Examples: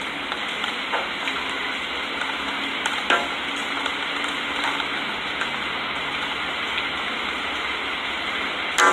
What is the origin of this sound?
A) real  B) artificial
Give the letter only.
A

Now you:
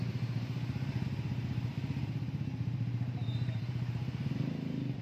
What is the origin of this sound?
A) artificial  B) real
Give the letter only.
A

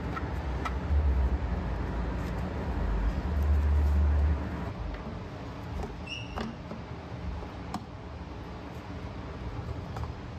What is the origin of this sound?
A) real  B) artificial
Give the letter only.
A